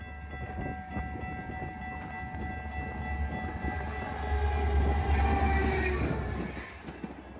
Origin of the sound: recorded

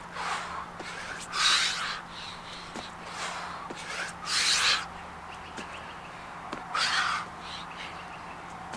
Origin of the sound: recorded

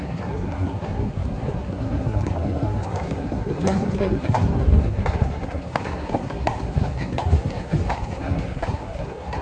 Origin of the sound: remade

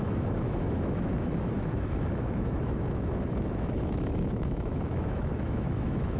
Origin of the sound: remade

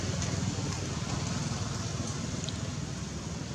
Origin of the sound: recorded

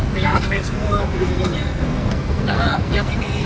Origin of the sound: remade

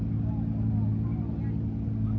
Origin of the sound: recorded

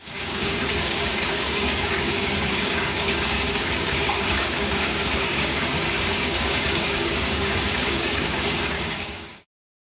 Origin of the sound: remade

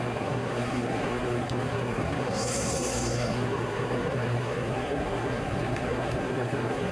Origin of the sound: remade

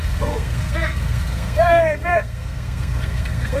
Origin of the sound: remade